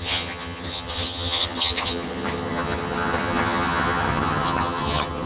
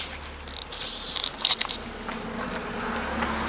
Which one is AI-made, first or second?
first